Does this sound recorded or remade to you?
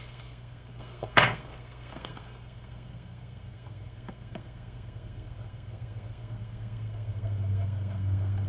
remade